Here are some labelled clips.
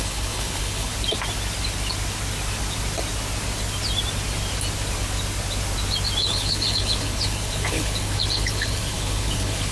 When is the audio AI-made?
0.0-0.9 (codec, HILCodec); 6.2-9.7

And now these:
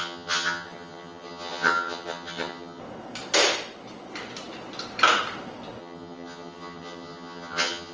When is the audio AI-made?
0.0-2.8 (vocoder, HiFi-GAN); 5.8-7.9

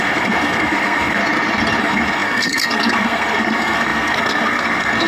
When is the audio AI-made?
0.0-1.2 (codec, SNAC); 1.8-5.1